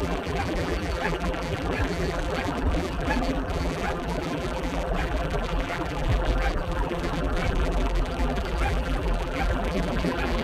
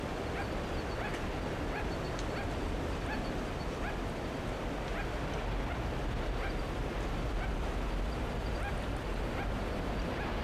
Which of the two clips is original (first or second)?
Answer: second